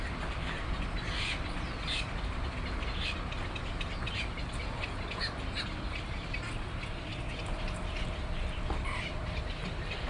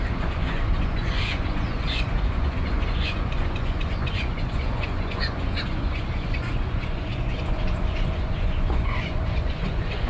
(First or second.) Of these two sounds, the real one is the first